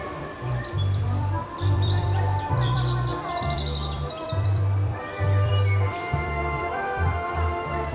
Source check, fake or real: fake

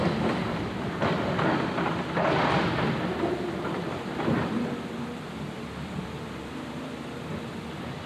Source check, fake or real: fake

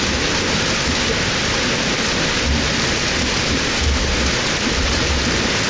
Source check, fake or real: real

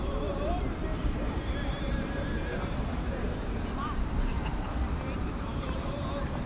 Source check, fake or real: fake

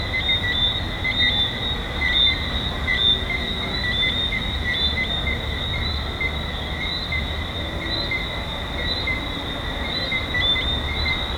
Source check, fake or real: real